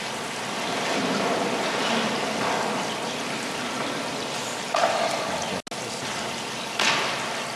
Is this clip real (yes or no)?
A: yes